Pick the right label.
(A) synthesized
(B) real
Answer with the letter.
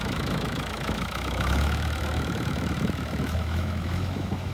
A